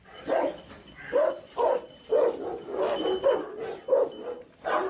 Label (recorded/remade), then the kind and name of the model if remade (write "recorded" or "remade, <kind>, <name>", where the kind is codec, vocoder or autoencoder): recorded